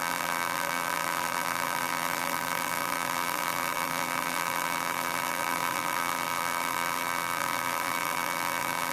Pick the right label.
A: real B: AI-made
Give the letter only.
B